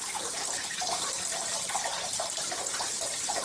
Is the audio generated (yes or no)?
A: no